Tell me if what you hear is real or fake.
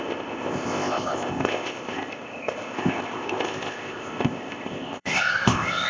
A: fake